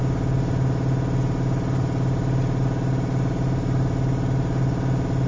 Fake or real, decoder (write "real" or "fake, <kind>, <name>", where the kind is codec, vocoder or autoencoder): real